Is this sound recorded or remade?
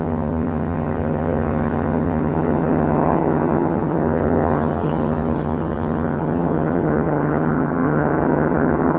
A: remade